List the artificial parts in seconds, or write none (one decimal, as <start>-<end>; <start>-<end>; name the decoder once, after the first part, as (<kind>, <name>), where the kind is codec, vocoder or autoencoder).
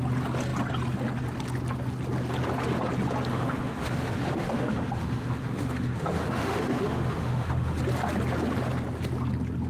3.3-7.8 (autoencoder, DAC-VAE)